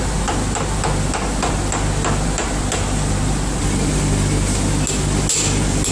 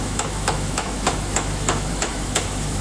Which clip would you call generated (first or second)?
second